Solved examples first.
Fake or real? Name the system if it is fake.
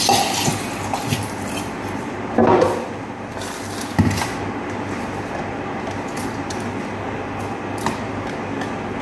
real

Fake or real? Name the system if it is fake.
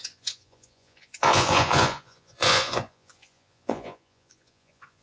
fake, vocoder, Vocos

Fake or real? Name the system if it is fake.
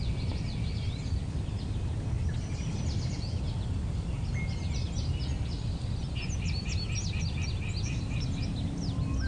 real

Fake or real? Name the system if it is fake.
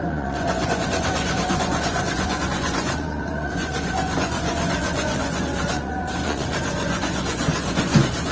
fake, vocoder, Vocos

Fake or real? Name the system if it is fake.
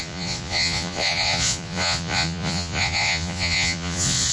fake, vocoder, Vocos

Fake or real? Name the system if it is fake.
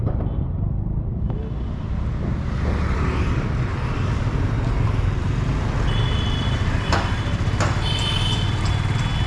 real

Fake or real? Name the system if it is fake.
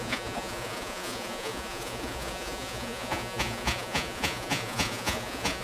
fake, vocoder, Vocos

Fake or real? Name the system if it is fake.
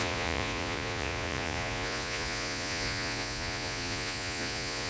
fake, vocoder, Vocos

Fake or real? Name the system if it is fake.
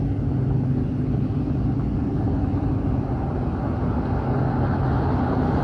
real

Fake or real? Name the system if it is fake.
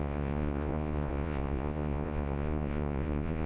fake, vocoder, Vocos